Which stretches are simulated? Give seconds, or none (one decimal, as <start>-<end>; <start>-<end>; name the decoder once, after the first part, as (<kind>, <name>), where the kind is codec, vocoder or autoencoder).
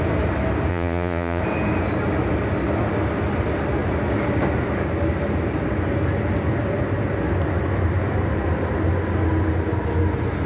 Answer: 0.7-1.4 (vocoder, Vocos)